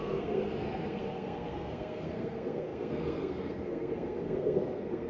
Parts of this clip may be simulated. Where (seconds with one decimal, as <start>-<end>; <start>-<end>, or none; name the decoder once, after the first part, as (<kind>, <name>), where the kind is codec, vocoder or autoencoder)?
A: 0.0-5.1 (codec, SNAC)